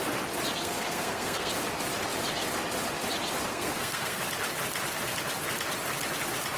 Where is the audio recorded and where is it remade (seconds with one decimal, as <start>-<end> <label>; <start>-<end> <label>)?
0.0-0.6 recorded; 0.6-1.5 remade; 1.5-3.5 recorded; 3.5-4.2 remade; 4.2-6.6 recorded